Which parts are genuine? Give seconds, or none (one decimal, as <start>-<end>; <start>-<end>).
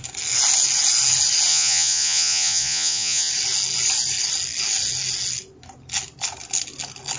0.0-1.5; 3.3-7.2